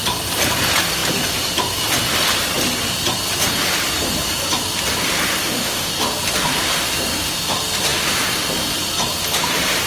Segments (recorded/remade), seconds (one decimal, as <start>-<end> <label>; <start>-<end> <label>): 0.0-5.4 recorded; 5.4-5.9 remade; 5.9-9.9 recorded